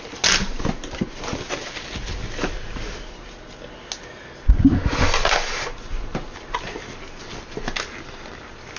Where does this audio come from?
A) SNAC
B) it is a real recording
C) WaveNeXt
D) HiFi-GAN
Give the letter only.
B